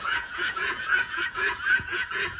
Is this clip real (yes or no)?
no